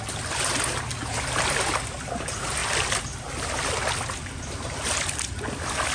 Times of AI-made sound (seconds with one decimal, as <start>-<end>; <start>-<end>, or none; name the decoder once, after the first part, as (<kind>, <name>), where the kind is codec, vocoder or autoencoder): none